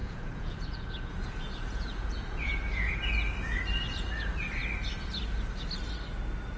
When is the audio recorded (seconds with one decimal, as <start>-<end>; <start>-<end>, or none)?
2.9-6.6